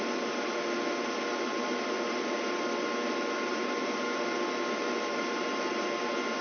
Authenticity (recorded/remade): recorded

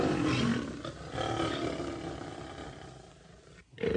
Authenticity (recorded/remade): recorded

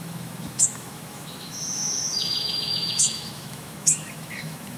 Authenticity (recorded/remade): remade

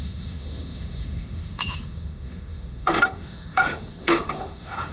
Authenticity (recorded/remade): remade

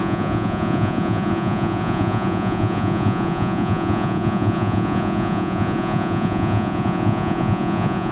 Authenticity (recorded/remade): remade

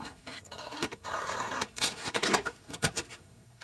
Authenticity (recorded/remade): remade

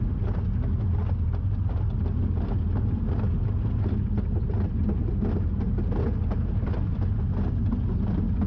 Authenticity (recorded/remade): recorded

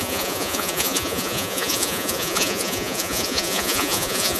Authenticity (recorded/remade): remade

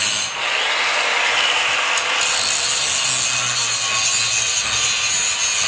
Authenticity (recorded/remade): recorded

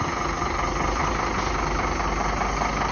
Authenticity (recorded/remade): recorded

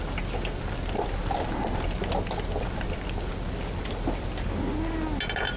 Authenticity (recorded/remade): recorded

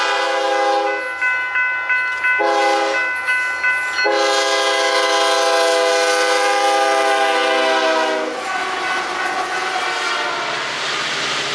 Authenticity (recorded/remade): recorded